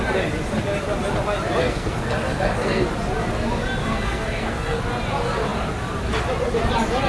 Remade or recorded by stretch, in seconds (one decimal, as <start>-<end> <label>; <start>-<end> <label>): 0.0-1.6 recorded; 1.6-2.9 remade; 2.9-3.8 recorded; 3.8-4.8 remade; 4.8-7.1 recorded